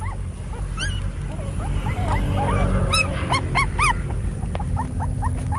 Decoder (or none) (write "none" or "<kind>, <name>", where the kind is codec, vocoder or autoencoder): none